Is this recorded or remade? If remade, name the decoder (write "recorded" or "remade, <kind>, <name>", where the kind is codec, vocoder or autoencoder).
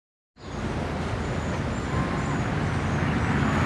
recorded